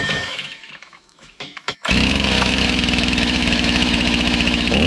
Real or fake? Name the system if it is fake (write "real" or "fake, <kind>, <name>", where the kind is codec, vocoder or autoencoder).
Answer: fake, autoencoder, DAC-VAE